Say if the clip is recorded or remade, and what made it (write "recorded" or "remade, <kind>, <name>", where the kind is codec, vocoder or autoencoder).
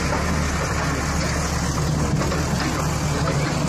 recorded